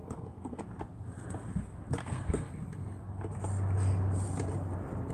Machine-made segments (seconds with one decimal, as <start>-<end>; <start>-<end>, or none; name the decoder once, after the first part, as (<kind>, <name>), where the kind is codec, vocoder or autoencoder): 0.0-0.6 (codec, SNAC); 2.0-2.5